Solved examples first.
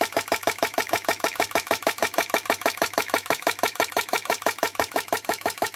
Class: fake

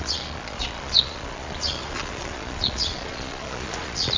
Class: fake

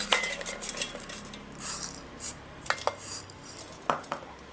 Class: real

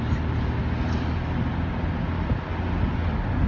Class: real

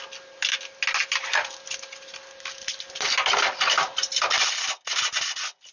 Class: real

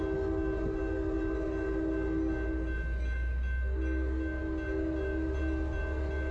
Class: real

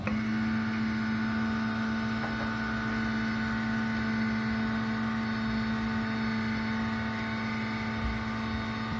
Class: real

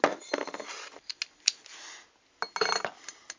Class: real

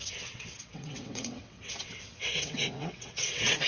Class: fake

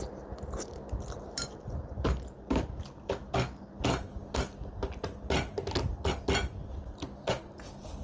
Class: real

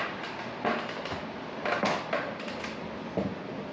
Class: real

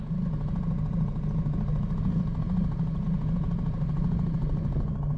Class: real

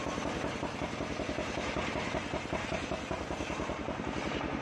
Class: real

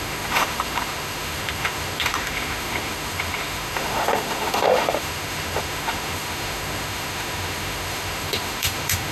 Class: fake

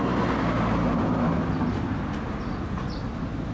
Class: real